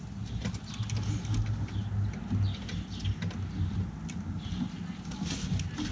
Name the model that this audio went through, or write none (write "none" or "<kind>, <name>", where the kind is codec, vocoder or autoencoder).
none